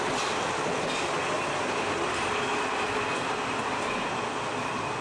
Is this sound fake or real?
real